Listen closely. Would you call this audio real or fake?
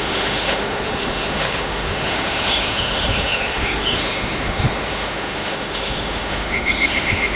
fake